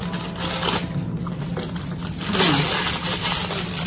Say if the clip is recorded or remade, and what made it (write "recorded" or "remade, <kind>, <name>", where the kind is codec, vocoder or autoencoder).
recorded